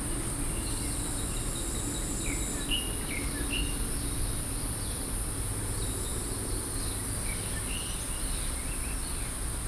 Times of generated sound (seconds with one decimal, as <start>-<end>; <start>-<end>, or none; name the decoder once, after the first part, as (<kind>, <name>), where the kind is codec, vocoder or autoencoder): none